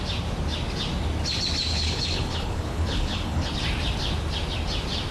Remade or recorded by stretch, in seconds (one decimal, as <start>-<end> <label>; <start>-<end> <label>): 0.0-1.7 recorded; 1.7-3.5 remade; 3.5-5.1 recorded